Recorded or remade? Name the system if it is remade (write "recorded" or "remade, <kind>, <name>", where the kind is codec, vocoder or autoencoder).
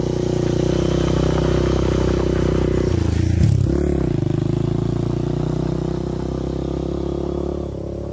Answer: recorded